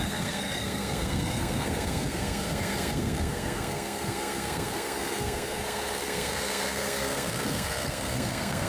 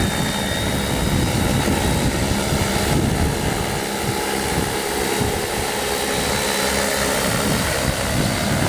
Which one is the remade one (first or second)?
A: first